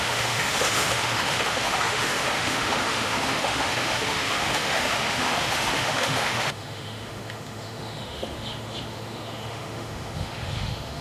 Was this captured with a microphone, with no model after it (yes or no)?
no